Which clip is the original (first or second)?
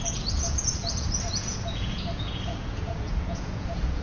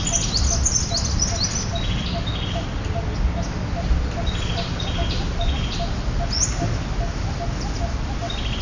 second